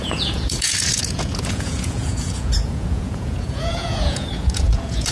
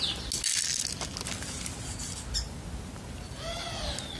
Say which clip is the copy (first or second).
first